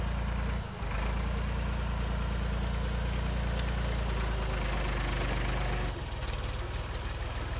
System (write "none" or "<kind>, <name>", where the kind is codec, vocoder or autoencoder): none